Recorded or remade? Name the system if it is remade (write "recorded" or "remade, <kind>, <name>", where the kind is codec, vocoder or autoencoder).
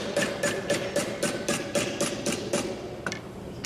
recorded